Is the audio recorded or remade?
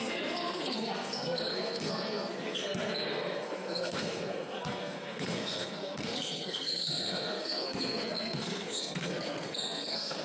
remade